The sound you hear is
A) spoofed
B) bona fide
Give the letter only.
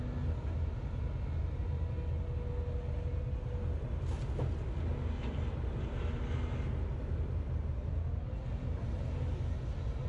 B